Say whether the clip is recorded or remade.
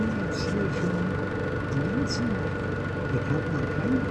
recorded